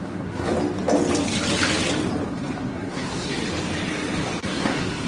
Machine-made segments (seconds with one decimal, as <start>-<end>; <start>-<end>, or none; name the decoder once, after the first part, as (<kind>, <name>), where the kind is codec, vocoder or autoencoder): 0.0-0.5 (codec, SNAC); 2.3-3.4; 4.4-5.1